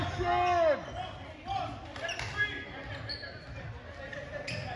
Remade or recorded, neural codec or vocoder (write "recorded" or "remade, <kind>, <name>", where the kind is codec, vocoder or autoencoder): recorded